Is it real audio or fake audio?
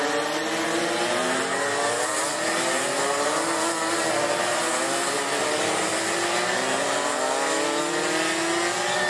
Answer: real